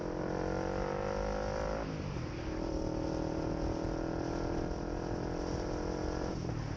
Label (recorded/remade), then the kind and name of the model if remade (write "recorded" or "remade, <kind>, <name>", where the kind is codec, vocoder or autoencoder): recorded